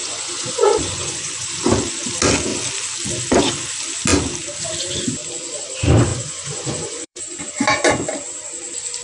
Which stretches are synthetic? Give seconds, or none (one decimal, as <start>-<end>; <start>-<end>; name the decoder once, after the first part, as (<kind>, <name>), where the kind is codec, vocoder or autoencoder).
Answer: 0.0-1.6 (vocoder, Vocos); 6.1-7.4